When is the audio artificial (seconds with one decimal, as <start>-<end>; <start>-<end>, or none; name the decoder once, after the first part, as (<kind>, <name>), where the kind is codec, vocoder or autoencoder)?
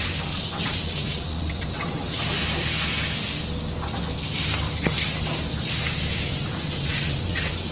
0.0-2.2 (vocoder, WaveNeXt); 6.8-7.7